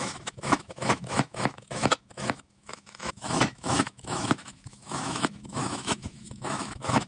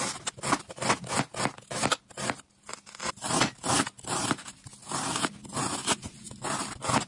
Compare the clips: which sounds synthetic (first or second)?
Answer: first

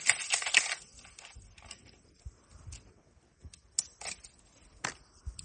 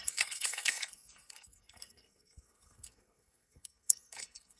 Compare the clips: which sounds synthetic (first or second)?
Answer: second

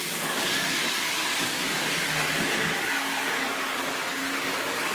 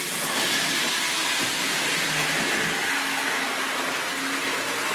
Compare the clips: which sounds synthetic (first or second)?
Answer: first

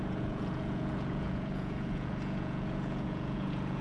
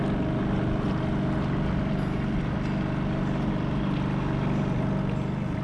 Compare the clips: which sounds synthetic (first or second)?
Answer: first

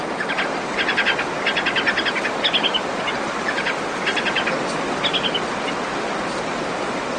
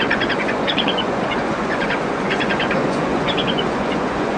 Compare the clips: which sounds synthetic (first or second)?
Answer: second